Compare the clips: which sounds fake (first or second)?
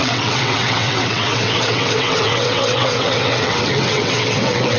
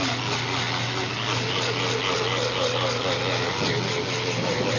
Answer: first